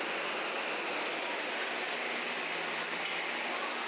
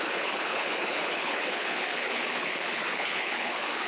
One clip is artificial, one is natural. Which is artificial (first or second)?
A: second